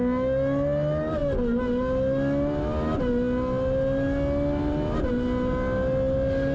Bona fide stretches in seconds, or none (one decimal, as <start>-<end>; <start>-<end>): 0.0-6.5